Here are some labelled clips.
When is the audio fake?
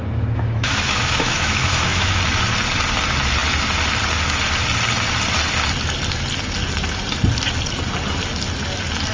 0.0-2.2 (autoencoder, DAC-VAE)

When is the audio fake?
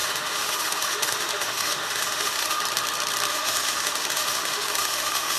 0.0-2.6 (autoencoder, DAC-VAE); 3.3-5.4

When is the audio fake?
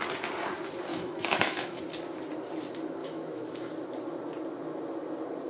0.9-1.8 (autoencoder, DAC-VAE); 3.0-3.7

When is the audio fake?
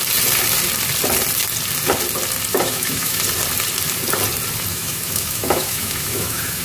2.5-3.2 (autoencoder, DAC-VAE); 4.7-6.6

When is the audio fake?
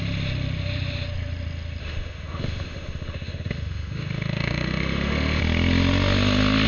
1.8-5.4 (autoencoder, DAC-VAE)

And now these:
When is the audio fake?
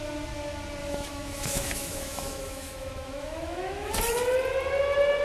0.8-3.9 (autoencoder, DAC-VAE)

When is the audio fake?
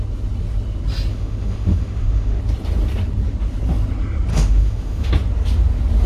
1.1-2.4 (autoencoder, DAC-VAE); 4.3-5.1